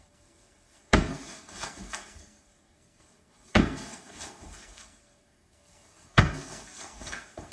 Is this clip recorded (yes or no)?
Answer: no